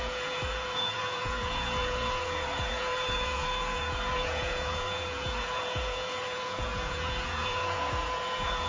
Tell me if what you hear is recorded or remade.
remade